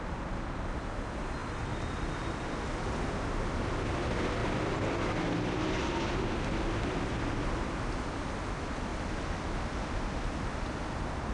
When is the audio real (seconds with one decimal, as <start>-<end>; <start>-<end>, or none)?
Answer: 0.0-1.4; 2.5-8.9; 10.9-11.3